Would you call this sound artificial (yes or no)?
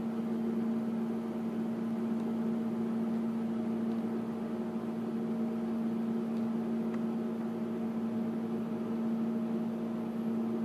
no